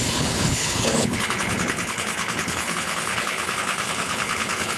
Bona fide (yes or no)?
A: no